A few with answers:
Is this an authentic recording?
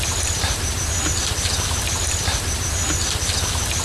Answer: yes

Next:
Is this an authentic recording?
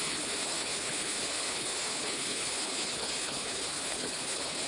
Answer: no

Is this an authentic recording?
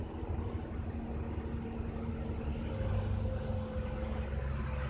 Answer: yes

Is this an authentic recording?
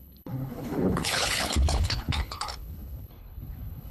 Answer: no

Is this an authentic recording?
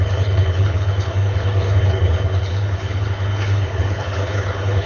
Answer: no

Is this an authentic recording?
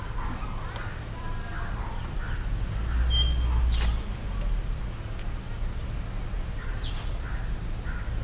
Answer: yes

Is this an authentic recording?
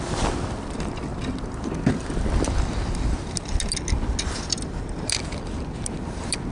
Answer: yes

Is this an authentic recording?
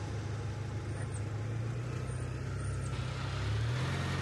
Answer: yes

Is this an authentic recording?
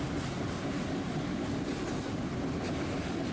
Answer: yes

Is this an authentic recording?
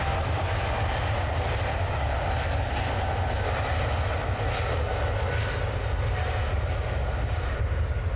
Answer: yes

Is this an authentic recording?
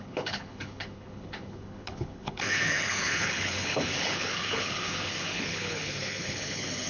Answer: no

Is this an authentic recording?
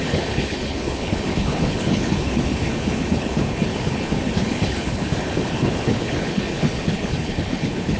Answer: no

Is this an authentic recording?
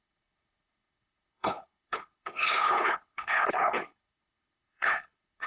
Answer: no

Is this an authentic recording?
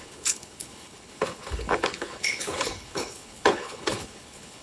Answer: no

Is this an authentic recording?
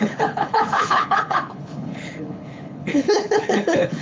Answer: no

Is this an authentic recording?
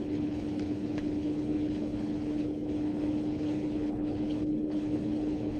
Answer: no